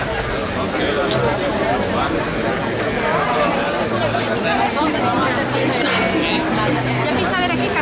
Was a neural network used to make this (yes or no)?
no